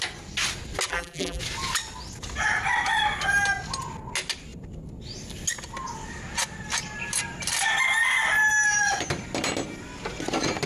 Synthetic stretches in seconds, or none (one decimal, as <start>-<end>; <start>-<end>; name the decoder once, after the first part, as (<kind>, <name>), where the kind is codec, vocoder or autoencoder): 0.9-1.4 (vocoder, BigVGAN v2)